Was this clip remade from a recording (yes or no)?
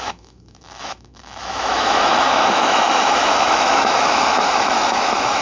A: yes